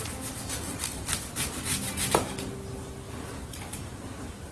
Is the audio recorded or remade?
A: recorded